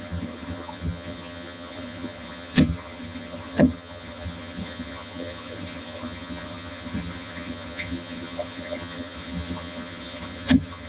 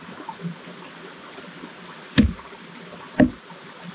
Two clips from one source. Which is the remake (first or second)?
first